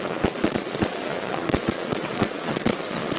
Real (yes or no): no